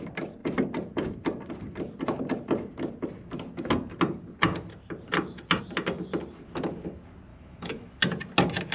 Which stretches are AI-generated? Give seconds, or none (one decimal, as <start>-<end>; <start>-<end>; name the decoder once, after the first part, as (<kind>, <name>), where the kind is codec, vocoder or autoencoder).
7.3-7.9 (autoencoder, DAC-VAE)